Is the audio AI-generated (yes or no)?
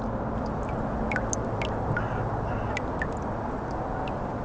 no